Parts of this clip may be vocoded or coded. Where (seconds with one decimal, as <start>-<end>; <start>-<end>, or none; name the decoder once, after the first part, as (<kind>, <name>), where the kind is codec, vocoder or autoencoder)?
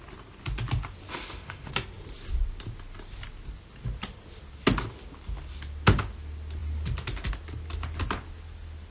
1.1-1.7 (autoencoder, DAC-VAE)